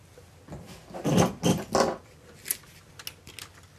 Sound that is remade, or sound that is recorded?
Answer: recorded